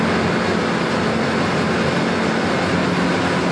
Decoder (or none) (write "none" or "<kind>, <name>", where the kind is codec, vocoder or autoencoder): none